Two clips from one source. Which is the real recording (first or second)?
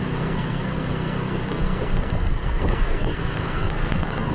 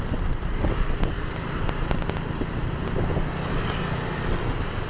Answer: second